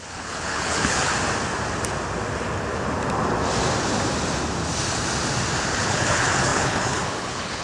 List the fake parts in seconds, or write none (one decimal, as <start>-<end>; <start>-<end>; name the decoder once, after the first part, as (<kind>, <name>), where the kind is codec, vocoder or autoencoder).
0.0-1.1 (codec, HILCodec); 5.7-7.6